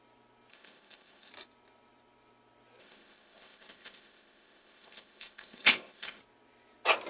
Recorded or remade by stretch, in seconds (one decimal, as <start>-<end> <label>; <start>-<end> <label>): 0.0-0.5 recorded; 0.5-1.3 remade; 1.3-2.8 recorded; 2.8-6.2 remade; 6.2-7.1 recorded

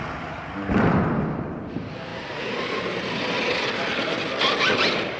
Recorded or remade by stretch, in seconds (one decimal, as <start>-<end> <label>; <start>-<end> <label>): 0.0-5.2 recorded